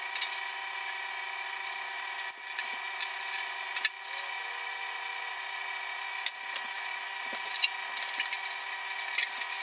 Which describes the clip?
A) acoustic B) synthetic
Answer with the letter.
A